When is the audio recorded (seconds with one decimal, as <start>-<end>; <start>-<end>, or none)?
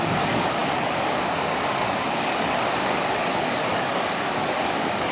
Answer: none